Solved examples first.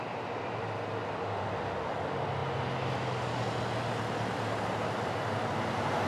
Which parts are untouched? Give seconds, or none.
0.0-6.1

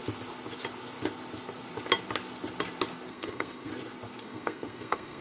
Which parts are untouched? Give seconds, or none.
0.0-3.1; 3.7-4.2

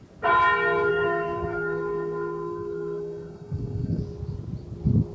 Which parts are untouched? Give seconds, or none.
0.0-0.9; 4.0-5.1

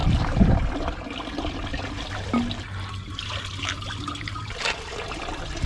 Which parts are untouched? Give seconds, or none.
0.0-5.7

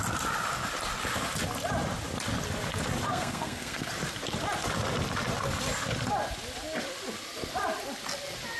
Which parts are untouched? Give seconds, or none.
0.0-3.1; 3.9-8.6

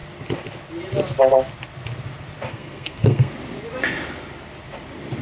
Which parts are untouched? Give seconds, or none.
0.0-2.5; 3.3-5.2

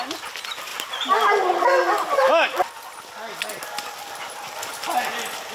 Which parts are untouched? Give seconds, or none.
0.0-5.5